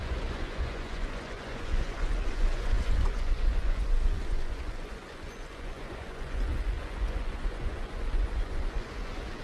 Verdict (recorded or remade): remade